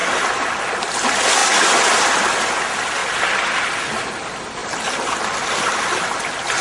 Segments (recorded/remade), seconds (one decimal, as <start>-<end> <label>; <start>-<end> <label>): 0.0-6.6 recorded